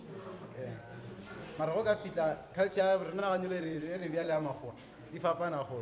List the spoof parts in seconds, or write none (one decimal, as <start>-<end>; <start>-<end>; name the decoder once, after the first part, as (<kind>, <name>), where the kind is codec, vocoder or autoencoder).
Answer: 0.9-1.6 (vocoder, Vocos); 2.0-2.8; 3.2-4.7